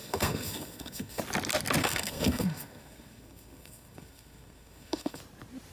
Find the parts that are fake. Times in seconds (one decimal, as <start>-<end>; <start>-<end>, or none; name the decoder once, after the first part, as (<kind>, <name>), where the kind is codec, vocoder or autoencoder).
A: 0.0-1.2 (codec, SNAC); 1.8-5.2